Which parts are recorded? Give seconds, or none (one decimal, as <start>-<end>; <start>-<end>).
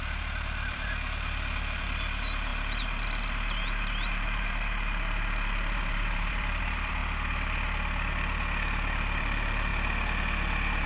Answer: 7.0-9.2; 9.7-10.9